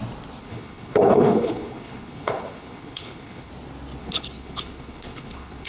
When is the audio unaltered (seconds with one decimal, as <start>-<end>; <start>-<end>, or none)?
0.0-0.4; 3.5-4.0

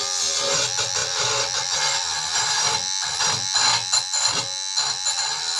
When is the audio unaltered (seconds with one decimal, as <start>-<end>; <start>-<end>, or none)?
0.0-5.6

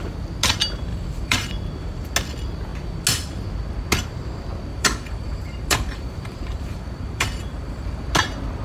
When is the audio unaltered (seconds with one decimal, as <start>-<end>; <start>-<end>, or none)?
0.0-0.9; 1.5-4.7; 8.1-8.6

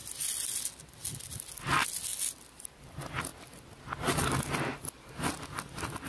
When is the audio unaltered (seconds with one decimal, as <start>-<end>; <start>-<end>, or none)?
0.0-6.1

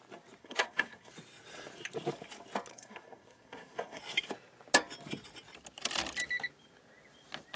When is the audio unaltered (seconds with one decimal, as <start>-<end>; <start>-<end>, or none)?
0.0-0.4; 1.1-2.7; 4.0-7.6

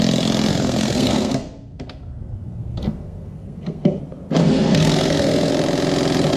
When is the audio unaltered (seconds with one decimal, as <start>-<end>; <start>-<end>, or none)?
0.0-0.5; 4.0-4.4; 5.5-6.4